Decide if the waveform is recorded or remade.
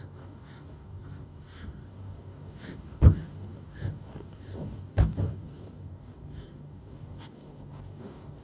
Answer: remade